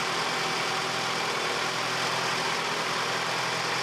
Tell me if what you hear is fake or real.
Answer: real